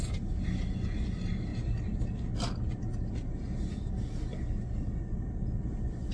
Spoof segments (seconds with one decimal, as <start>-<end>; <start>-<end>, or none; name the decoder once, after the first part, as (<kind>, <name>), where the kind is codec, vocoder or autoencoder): none